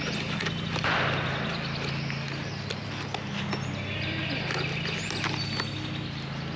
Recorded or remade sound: recorded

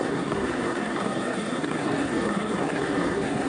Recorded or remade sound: remade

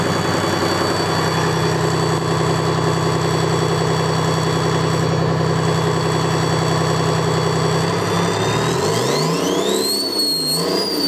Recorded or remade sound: recorded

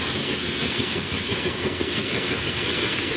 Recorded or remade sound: remade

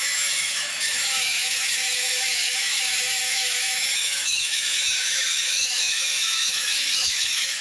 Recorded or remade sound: remade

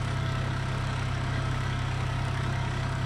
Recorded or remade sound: remade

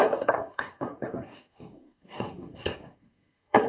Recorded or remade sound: remade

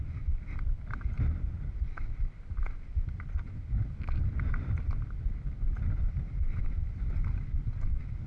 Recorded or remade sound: recorded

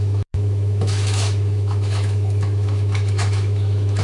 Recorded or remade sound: remade